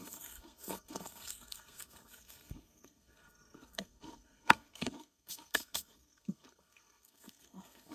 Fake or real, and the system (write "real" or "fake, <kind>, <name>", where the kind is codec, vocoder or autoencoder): fake, codec, SNAC